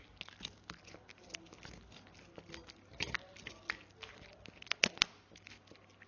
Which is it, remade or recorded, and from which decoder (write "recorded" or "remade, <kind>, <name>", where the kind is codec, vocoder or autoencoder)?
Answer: recorded